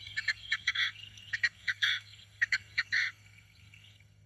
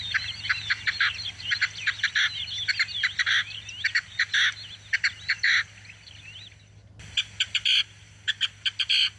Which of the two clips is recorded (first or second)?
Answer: second